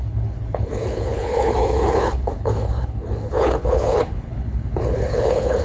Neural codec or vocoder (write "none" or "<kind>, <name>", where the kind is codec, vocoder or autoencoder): codec, HILCodec